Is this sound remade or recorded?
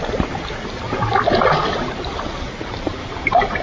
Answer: recorded